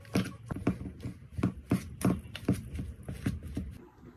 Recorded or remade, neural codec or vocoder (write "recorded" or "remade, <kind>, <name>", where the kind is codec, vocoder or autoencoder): recorded